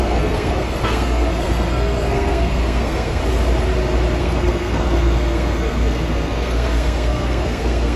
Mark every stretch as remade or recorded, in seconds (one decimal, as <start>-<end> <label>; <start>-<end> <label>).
0.0-3.2 remade; 3.2-4.2 recorded; 4.2-8.0 remade